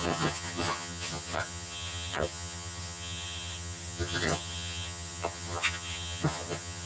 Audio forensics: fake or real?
fake